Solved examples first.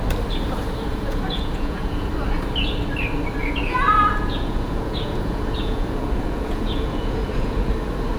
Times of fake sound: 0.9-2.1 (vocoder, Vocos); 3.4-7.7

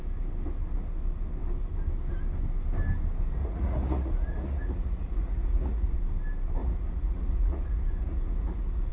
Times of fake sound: 3.4-6.0 (vocoder, Vocos); 6.6-8.9

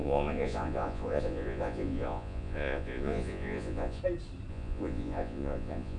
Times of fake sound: 0.0-4.0 (vocoder, Vocos); 4.5-6.0